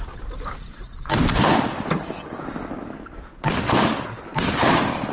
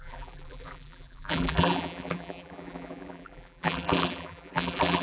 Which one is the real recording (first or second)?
first